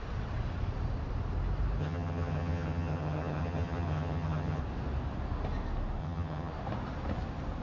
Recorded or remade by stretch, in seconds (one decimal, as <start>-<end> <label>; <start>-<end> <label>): 0.0-1.8 recorded; 1.8-4.6 remade; 4.6-6.0 recorded; 6.0-6.5 remade; 6.5-7.6 recorded